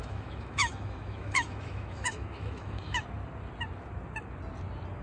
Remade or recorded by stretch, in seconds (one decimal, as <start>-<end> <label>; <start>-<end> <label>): 0.0-3.0 remade; 3.0-5.0 recorded